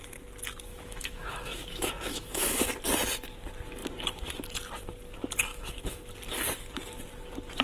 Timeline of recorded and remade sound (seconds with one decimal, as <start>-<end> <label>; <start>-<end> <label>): 0.0-0.7 recorded; 0.7-2.7 remade; 2.7-5.5 recorded; 5.5-6.1 remade; 6.1-7.6 recorded